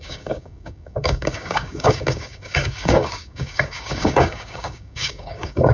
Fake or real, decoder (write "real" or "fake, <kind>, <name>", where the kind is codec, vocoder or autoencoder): fake, codec, DAC